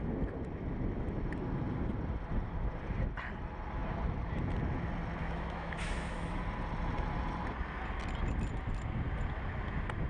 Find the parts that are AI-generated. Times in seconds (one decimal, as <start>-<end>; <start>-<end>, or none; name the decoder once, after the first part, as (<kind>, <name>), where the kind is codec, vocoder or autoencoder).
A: 5.2-6.4 (autoencoder, DAC-VAE)